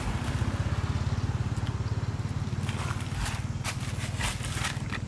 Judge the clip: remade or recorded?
recorded